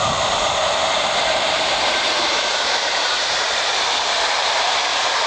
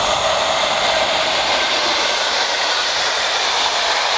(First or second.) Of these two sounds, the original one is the second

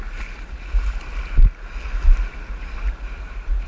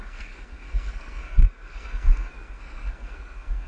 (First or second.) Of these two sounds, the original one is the first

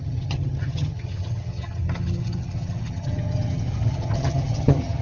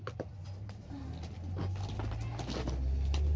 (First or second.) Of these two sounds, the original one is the second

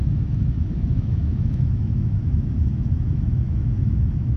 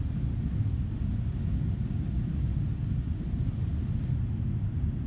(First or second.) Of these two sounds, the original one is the second